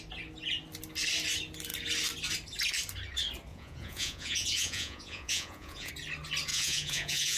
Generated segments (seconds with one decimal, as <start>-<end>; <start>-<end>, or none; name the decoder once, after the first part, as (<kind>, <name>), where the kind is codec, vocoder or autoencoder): 3.5-5.9 (vocoder, Vocos); 6.5-7.4